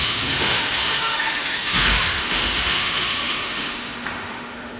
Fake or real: fake